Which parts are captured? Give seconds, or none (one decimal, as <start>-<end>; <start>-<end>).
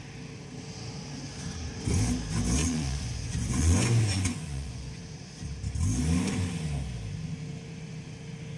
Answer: 0.0-2.6; 5.0-8.6